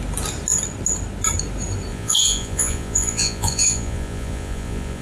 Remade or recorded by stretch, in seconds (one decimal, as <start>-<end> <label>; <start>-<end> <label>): 0.0-1.9 recorded; 1.9-5.0 remade